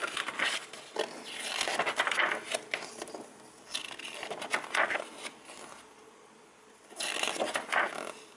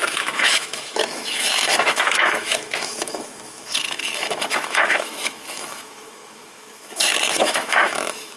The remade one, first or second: second